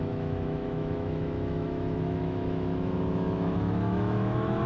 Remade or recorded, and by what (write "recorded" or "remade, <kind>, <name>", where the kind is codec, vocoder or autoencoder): remade, autoencoder, DAC-VAE